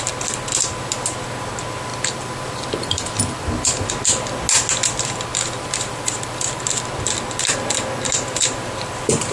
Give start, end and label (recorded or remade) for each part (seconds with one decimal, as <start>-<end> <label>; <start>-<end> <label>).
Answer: 0.0-1.9 recorded; 1.9-3.9 remade; 3.9-5.3 recorded; 5.3-6.6 remade; 6.6-9.3 recorded